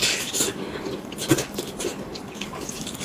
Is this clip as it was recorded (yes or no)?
no